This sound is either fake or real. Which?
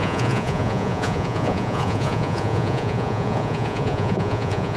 fake